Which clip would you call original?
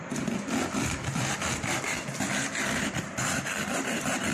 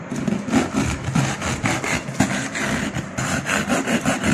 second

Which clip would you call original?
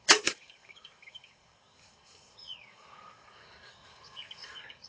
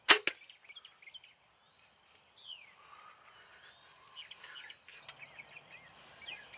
second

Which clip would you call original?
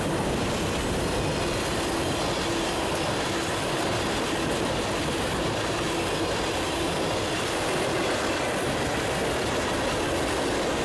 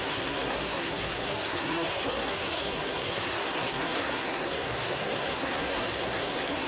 first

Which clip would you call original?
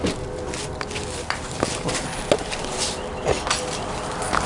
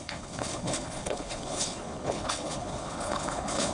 first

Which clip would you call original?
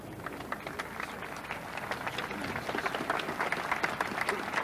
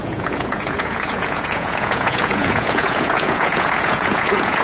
first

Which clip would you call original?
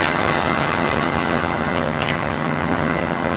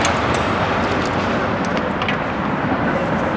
second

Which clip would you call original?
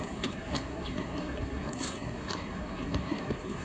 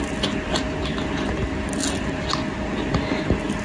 second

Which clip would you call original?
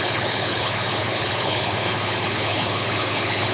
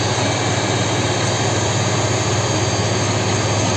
second